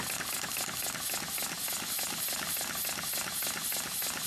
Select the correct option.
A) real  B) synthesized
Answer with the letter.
A